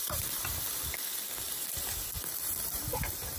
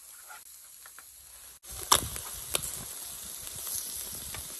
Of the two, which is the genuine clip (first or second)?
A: second